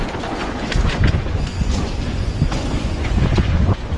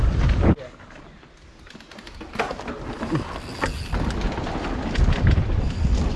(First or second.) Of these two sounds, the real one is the second